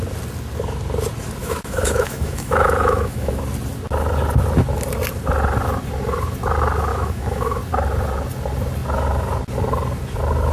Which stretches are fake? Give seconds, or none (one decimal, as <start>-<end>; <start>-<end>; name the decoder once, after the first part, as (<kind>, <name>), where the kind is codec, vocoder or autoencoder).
1.4-3.4 (autoencoder, DAC-VAE); 6.9-7.6

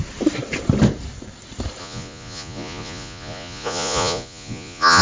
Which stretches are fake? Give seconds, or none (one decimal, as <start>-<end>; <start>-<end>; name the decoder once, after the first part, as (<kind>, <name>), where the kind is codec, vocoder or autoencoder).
1.8-5.0 (vocoder, Vocos)